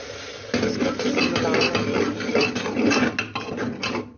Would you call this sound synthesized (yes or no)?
no